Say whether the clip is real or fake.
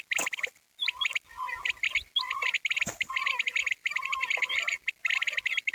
real